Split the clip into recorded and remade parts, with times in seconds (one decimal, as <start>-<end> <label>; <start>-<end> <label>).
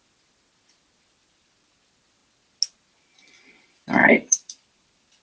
0.0-4.0 recorded; 4.0-5.2 remade